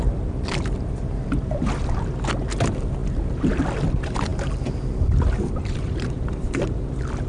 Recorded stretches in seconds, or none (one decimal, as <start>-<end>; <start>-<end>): 1.8-2.3; 3.0-3.9; 4.3-5.5